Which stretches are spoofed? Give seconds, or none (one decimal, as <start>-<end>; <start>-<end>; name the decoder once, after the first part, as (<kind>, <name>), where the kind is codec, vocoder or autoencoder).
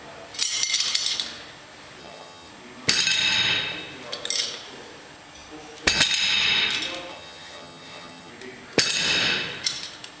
2.0-2.5 (vocoder, HiFi-GAN); 7.1-8.3